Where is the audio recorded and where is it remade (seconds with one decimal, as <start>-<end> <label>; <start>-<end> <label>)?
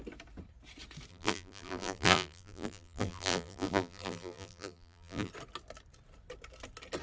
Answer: 0.0-1.1 recorded; 1.1-5.3 remade; 5.3-7.0 recorded